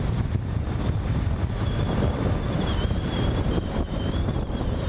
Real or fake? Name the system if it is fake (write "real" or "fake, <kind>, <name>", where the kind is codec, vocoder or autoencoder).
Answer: fake, vocoder, BigVGAN v2